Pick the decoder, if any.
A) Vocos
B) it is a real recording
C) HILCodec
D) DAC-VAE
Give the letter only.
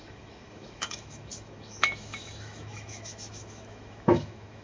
D